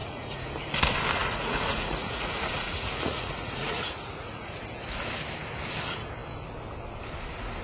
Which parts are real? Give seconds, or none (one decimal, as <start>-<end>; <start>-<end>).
0.5-1.2; 4.6-7.6